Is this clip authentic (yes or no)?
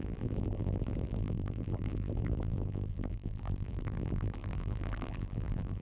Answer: no